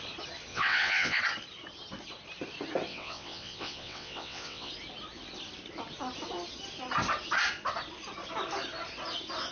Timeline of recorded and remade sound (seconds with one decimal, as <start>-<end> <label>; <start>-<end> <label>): 0.0-0.5 recorded; 0.5-1.2 remade; 1.2-2.9 recorded; 2.9-4.7 remade; 4.7-9.5 recorded

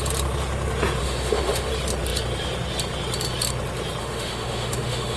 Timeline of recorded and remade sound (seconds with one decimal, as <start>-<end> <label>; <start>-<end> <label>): 0.0-1.0 recorded; 1.0-1.7 remade; 1.7-4.0 recorded; 4.0-5.2 remade

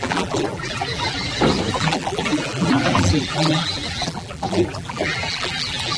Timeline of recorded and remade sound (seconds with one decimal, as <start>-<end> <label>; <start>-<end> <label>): 0.0-1.2 remade; 1.2-1.7 recorded; 1.7-6.0 remade

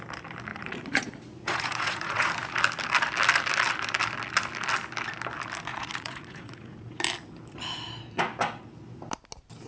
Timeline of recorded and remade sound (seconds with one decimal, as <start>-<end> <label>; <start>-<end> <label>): 0.0-0.5 recorded; 0.5-2.3 remade; 2.3-5.7 recorded; 5.7-7.0 remade; 7.0-9.7 recorded

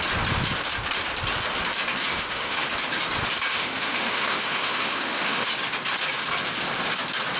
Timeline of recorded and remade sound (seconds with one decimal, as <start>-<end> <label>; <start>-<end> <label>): 0.0-2.1 recorded; 2.1-2.6 remade; 2.6-3.5 recorded; 3.5-5.5 remade; 5.5-7.4 recorded

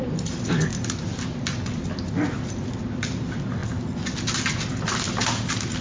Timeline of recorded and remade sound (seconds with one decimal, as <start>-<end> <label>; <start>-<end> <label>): 0.0-5.8 recorded